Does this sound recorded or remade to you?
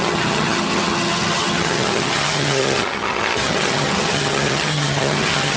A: remade